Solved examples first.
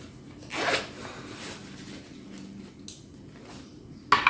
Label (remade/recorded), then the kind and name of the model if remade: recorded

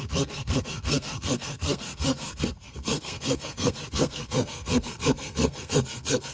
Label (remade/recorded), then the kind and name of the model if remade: remade, codec, SNAC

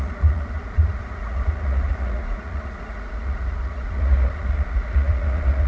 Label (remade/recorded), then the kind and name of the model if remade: remade, vocoder, Vocos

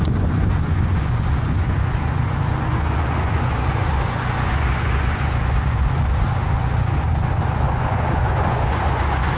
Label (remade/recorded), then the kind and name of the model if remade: remade, vocoder, Vocos